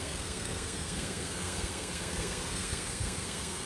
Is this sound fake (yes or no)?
yes